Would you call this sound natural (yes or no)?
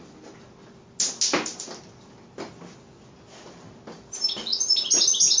yes